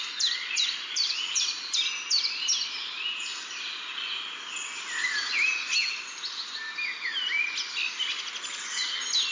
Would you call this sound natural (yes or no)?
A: yes